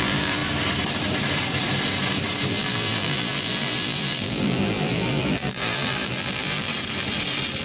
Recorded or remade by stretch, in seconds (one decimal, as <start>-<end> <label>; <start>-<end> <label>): 0.0-0.4 remade; 0.4-2.5 recorded; 2.5-6.7 remade; 6.7-7.6 recorded